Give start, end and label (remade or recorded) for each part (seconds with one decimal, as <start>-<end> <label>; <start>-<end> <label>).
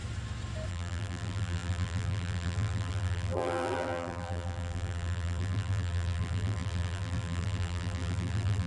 0.0-0.7 recorded; 0.7-8.7 remade